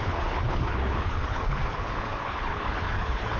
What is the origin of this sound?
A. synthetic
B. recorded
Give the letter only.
A